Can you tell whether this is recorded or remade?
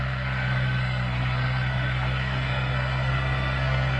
remade